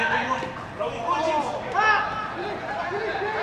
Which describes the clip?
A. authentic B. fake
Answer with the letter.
A